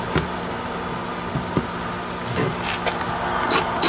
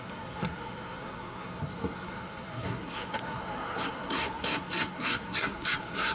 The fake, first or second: second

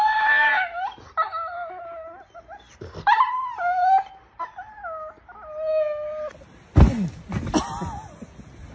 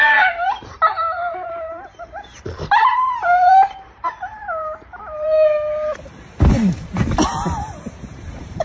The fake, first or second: second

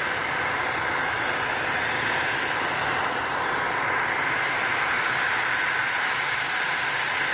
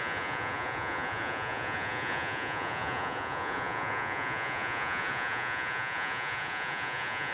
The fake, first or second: second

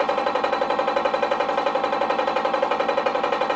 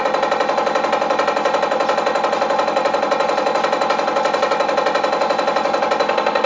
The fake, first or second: first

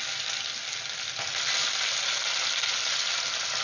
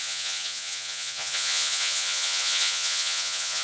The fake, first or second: second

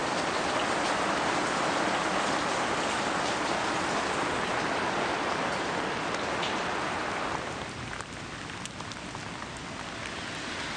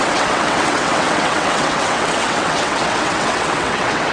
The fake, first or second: second